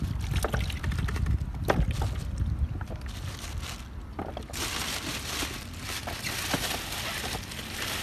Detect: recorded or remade recorded